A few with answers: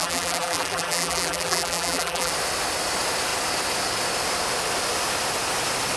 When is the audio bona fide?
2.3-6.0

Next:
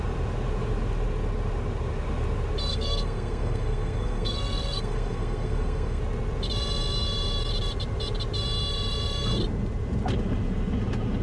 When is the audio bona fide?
0.0-2.7; 6.0-11.2

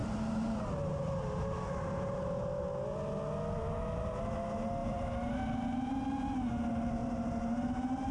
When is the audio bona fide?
2.6-4.8; 5.3-7.0

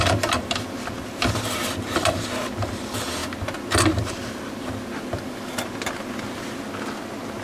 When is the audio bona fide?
0.0-7.4

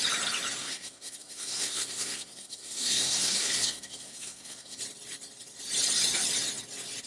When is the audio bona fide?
0.0-0.6; 4.8-7.1